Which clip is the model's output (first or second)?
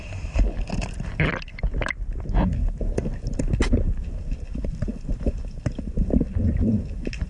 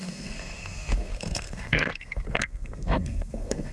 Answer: second